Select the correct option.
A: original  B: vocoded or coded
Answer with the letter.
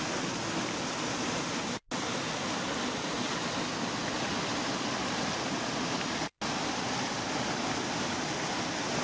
A